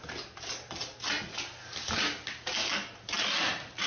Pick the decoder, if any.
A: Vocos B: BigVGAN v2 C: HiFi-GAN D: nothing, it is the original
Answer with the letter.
D